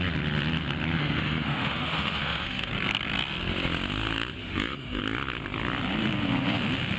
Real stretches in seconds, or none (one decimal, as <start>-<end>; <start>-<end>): 0.0-1.0; 2.7-4.4; 5.0-7.0